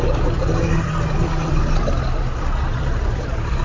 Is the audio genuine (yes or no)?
yes